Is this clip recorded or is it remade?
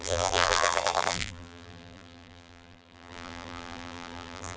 remade